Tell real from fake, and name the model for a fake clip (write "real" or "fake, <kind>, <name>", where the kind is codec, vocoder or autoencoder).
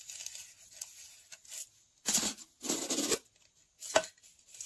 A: real